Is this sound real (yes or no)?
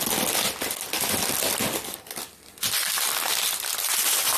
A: yes